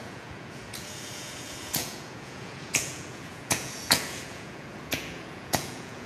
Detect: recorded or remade remade